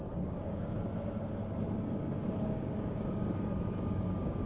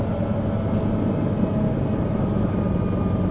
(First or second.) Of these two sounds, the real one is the second